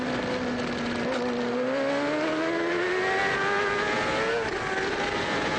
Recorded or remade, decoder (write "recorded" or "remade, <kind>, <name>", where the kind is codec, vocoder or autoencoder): recorded